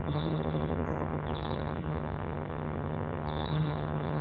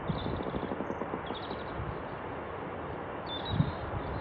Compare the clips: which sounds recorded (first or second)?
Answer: second